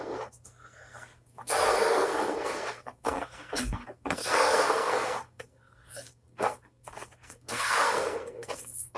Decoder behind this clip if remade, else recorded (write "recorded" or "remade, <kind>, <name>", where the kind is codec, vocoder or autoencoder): remade, codec, SNAC